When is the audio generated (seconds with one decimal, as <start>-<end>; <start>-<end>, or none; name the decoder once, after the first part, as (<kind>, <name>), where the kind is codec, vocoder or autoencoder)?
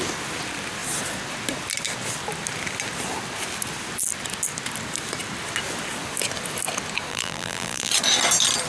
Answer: 7.1-7.9 (vocoder, BigVGAN v2)